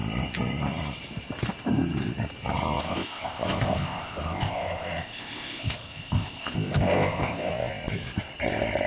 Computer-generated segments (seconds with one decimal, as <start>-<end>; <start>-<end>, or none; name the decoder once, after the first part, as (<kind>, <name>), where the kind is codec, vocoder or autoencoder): 2.8-7.5 (codec, ZipCodec)